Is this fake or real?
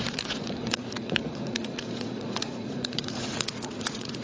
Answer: fake